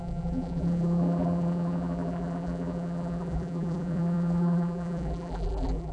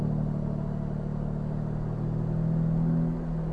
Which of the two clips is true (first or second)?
second